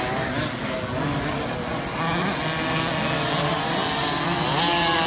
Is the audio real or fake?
real